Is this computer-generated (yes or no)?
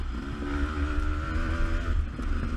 no